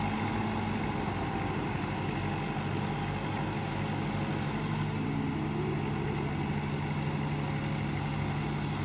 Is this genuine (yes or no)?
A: yes